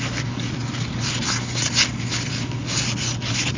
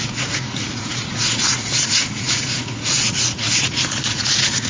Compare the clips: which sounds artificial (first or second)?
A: second